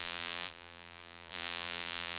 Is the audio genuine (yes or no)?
no